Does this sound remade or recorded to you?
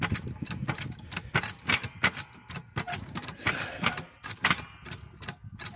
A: recorded